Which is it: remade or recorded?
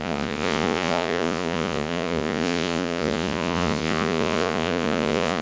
remade